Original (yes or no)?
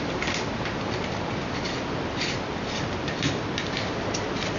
yes